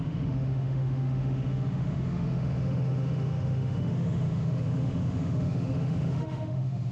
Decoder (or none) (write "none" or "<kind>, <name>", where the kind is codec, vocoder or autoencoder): autoencoder, DAC-VAE